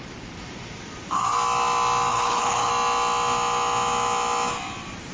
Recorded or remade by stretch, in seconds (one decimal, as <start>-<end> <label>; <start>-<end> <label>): 0.0-2.1 recorded; 2.1-2.7 remade; 2.7-5.1 recorded